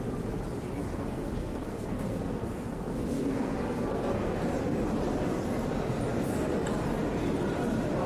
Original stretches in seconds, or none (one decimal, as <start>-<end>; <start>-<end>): 0.0-0.8; 4.4-8.1